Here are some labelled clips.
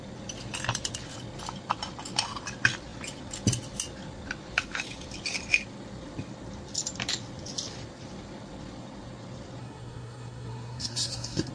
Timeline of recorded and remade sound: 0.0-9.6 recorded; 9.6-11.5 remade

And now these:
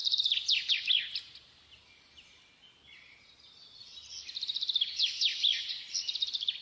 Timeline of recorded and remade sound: 0.0-6.6 recorded

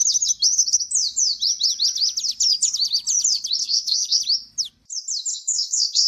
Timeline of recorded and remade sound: 0.0-3.6 recorded; 3.6-4.2 remade; 4.2-5.3 recorded; 5.3-6.1 remade

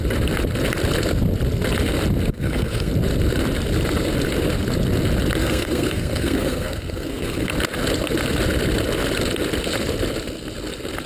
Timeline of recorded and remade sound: 0.0-2.3 recorded; 2.3-2.9 remade; 2.9-5.4 recorded; 5.4-7.5 remade; 7.5-11.1 recorded